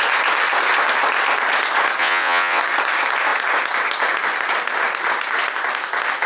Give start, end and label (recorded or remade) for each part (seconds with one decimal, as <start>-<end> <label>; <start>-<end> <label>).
0.0-2.0 recorded; 2.0-2.6 remade; 2.6-6.3 recorded